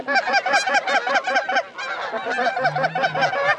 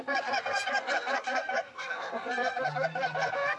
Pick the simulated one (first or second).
second